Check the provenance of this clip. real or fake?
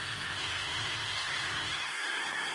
fake